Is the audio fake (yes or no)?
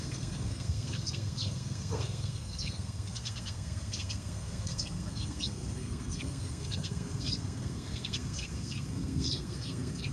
yes